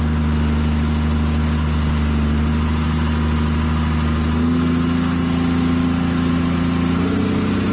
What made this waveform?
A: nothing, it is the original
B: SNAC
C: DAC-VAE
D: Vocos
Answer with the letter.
A